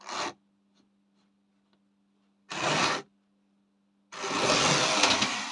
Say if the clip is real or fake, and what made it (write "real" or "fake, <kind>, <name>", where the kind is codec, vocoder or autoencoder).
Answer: real